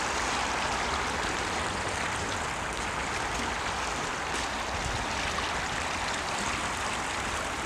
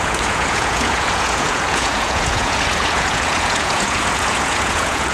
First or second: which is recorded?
first